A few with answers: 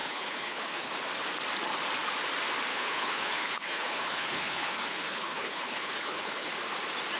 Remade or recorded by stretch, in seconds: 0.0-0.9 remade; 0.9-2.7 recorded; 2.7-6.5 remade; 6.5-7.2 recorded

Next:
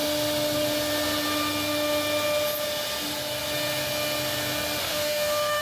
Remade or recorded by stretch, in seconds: 0.0-4.8 recorded; 4.8-5.6 remade

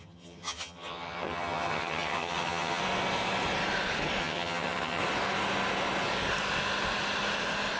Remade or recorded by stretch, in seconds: 0.0-2.8 remade; 2.8-4.2 recorded; 4.2-5.0 remade; 5.0-7.8 recorded

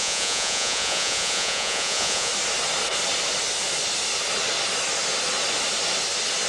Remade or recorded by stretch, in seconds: 0.0-2.3 remade; 2.3-6.5 recorded